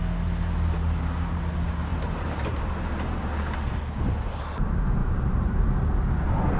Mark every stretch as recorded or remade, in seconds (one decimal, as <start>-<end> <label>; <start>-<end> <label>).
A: 0.0-1.9 recorded; 1.9-2.7 remade; 2.7-5.0 recorded; 5.0-5.7 remade; 5.7-6.6 recorded